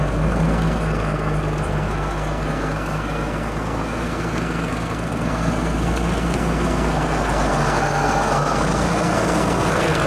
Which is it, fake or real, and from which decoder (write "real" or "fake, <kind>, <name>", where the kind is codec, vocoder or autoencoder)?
fake, codec, SNAC